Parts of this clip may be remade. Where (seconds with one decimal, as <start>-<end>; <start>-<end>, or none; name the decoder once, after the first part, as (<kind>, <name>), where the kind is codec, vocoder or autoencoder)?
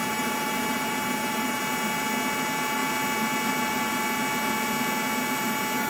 0.0-1.6 (vocoder, BigVGAN v2)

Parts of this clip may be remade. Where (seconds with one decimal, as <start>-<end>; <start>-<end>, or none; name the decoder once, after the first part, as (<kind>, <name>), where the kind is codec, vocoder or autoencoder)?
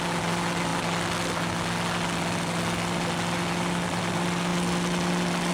none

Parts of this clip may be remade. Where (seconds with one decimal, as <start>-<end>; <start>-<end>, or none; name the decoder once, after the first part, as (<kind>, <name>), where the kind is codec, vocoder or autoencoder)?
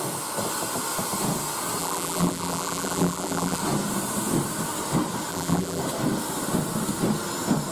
1.8-3.6 (vocoder, BigVGAN v2); 5.3-5.8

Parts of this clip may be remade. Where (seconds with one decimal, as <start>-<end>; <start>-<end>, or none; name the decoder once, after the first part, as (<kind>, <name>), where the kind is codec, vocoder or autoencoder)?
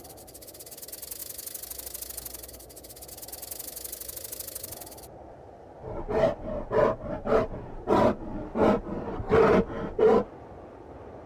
none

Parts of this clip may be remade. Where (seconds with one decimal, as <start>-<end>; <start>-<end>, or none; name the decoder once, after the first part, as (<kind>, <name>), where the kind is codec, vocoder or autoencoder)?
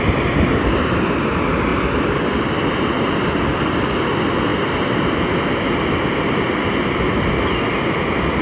4.5-5.7 (vocoder, BigVGAN v2)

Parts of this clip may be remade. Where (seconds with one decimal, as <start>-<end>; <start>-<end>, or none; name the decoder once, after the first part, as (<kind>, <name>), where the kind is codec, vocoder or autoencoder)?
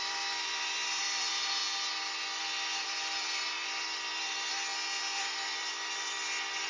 0.0-1.6 (vocoder, BigVGAN v2); 2.4-4.7; 5.2-6.7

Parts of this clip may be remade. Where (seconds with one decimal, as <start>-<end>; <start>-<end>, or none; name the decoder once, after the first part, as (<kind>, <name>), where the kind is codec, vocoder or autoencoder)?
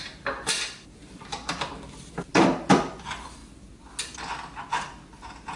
0.0-3.4 (vocoder, BigVGAN v2); 5.1-5.6